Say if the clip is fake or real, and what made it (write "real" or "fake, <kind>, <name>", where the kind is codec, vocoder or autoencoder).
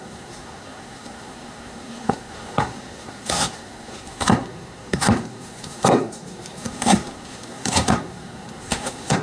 fake, codec, SNAC